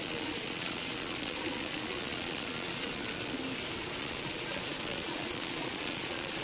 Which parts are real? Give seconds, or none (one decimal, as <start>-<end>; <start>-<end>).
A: 3.4-4.0